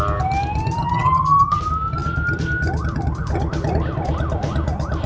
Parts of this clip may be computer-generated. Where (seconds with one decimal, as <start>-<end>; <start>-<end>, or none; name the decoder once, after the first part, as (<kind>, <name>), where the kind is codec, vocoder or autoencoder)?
0.8-1.6 (vocoder, HiFi-GAN)